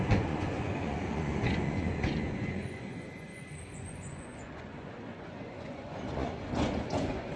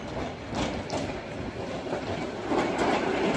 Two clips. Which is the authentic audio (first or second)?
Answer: second